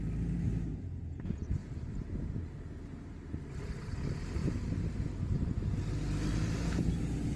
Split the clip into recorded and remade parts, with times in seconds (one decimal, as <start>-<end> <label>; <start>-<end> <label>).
0.0-7.4 recorded